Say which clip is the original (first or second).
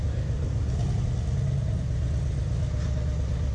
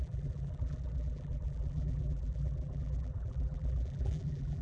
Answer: first